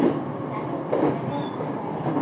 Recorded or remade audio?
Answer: recorded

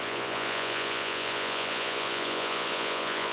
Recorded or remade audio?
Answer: remade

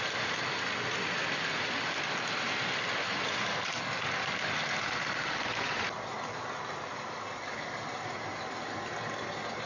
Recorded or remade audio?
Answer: recorded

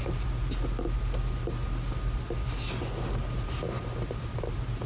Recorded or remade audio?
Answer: recorded